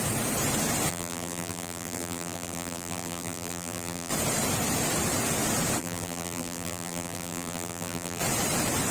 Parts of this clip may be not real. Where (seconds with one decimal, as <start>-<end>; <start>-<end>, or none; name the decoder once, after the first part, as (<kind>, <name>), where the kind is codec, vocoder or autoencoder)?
0.9-4.1 (vocoder, BigVGAN v2); 5.8-8.2